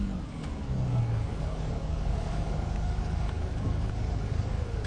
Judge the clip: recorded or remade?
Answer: remade